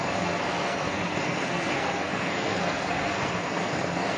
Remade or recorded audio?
remade